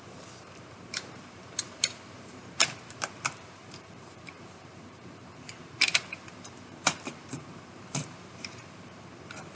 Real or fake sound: fake